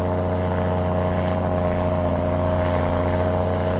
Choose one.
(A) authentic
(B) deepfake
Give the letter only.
A